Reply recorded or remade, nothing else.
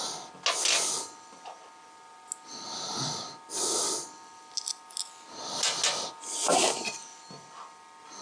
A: recorded